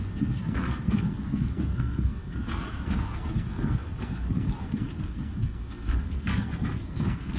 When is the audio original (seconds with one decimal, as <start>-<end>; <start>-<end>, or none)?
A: none